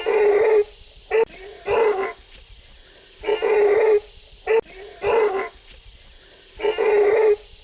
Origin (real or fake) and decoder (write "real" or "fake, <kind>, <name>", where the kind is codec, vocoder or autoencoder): real